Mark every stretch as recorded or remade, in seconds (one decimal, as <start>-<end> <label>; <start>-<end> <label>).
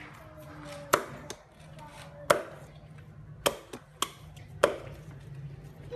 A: 0.0-6.0 recorded